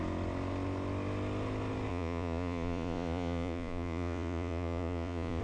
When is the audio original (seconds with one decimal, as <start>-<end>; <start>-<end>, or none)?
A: 0.0-1.9